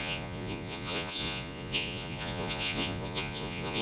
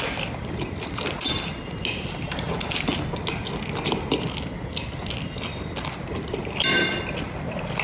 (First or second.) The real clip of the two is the second